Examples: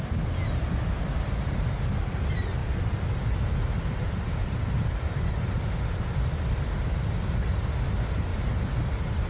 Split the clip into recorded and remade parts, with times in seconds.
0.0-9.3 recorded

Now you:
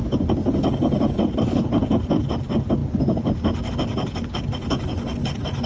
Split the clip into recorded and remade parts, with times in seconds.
0.0-5.7 recorded